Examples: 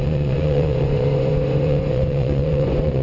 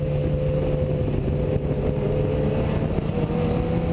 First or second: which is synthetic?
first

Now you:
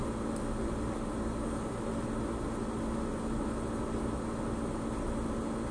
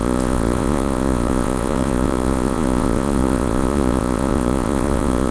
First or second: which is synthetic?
second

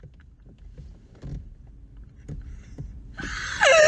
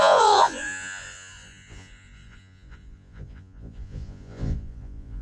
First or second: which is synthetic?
second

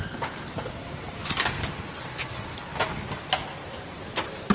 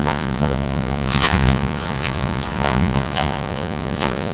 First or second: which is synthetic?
second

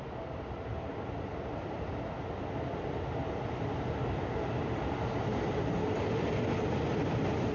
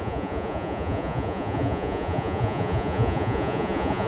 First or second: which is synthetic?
second